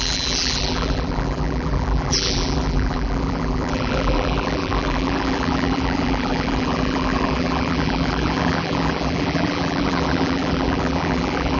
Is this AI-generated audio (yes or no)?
yes